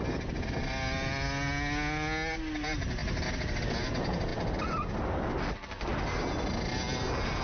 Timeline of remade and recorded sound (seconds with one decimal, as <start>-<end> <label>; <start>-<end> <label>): 0.0-7.4 recorded